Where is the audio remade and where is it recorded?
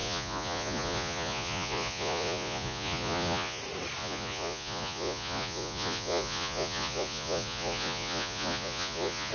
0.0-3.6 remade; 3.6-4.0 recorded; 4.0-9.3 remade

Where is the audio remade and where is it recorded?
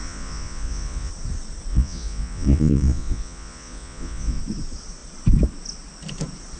0.0-1.1 remade; 1.1-1.7 recorded; 1.7-4.4 remade; 4.4-6.6 recorded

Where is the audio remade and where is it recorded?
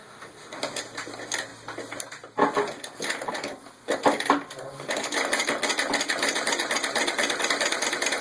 0.0-0.6 remade; 0.6-8.2 recorded